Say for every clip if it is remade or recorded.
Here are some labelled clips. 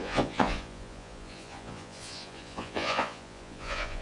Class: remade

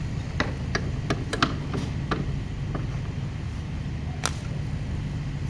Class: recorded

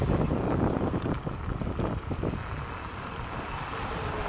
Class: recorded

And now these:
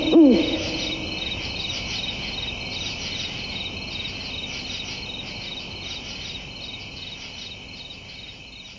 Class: recorded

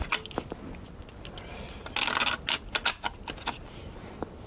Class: recorded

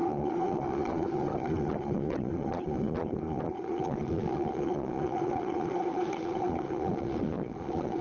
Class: remade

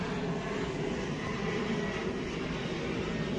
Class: recorded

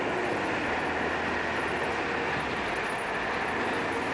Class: recorded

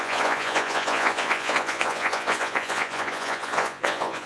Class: remade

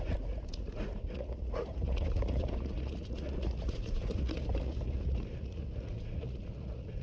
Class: remade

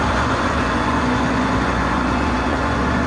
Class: remade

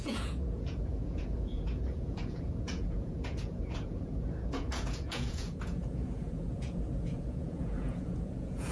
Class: remade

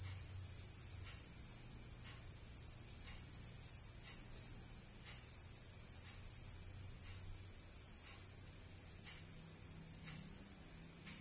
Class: recorded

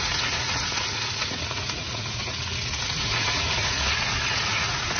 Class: remade